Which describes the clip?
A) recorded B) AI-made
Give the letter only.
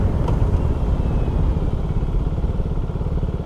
A